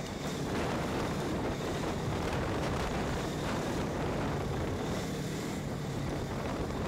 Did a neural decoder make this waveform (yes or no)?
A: yes